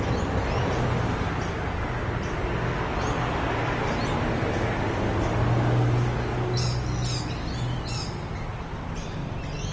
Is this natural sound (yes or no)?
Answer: yes